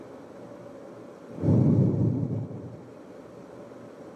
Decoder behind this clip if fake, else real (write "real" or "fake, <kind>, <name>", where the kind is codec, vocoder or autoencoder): real